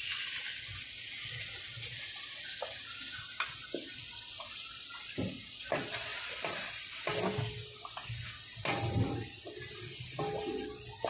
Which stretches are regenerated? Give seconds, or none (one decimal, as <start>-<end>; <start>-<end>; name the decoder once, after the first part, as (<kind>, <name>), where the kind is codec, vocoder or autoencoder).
none